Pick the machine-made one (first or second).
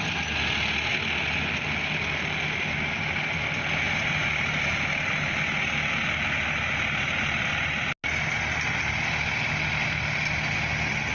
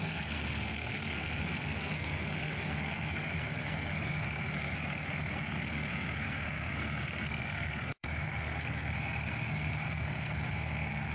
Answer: second